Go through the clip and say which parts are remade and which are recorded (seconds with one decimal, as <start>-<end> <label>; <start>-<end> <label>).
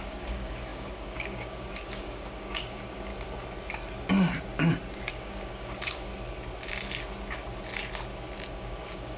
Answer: 0.0-3.1 remade; 3.1-5.1 recorded; 5.1-6.1 remade; 6.1-8.5 recorded; 8.5-9.2 remade